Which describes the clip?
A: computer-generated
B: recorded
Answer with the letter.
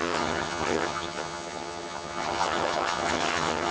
A